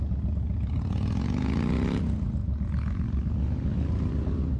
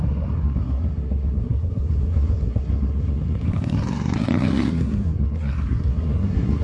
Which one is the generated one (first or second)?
second